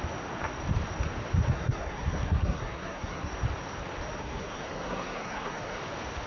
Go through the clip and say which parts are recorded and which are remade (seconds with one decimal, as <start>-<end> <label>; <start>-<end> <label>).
0.0-1.5 recorded; 1.5-3.3 remade; 3.3-4.2 recorded; 4.2-5.8 remade; 5.8-6.3 recorded